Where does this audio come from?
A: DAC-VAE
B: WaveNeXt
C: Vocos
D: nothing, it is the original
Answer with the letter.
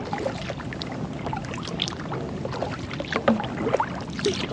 D